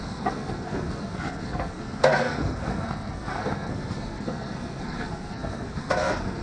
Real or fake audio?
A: fake